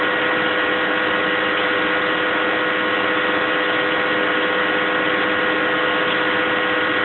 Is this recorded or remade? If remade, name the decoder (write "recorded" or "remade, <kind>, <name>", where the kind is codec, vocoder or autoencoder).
recorded